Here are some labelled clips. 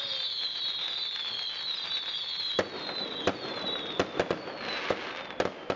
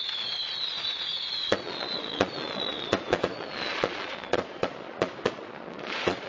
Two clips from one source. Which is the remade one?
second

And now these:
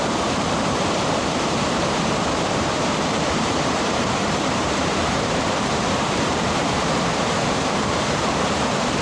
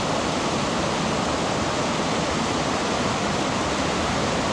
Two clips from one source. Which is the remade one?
first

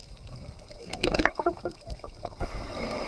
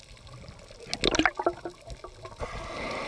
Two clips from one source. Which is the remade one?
first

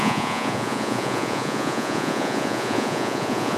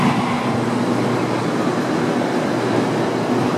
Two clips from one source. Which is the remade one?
first